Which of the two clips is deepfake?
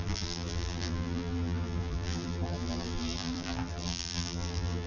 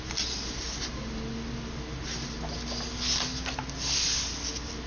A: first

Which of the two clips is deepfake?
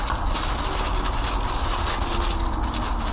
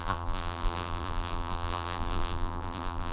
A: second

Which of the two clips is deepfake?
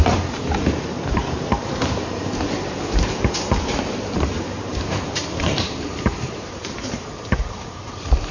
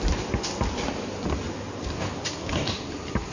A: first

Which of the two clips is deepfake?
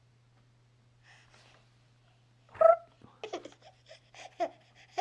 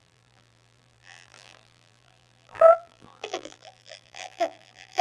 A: second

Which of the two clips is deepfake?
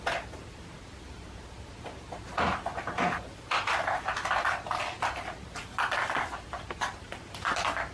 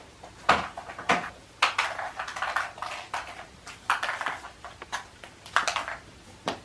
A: first